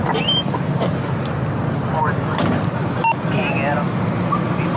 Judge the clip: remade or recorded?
recorded